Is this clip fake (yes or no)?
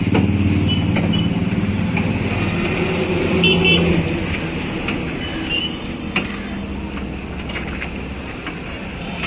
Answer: no